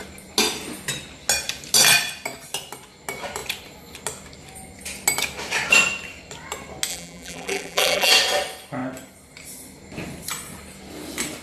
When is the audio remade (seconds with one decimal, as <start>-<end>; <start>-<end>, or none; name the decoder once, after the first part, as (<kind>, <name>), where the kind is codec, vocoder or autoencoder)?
6.9-8.1 (vocoder, BigVGAN v2)